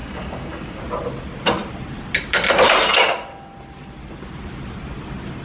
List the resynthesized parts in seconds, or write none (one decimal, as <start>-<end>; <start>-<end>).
0.0-0.8